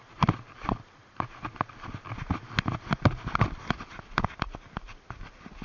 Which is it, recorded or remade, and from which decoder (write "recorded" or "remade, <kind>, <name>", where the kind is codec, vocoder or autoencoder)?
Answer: recorded